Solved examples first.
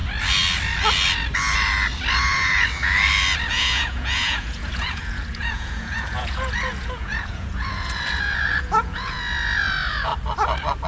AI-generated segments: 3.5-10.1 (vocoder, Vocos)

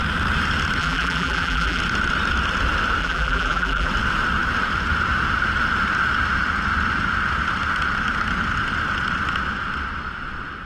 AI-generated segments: 0.8-1.8 (vocoder, BigVGAN v2); 3.0-3.9

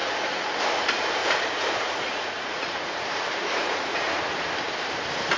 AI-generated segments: 0.0-0.6 (vocoder, Vocos); 1.2-4.1

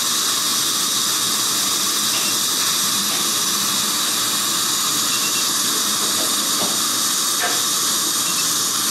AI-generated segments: none

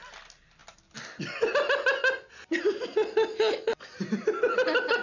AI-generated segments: none